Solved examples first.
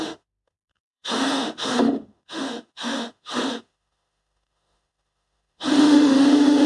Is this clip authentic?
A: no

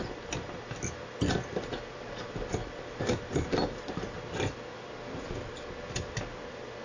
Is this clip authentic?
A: yes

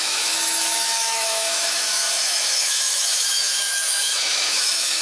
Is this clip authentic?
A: no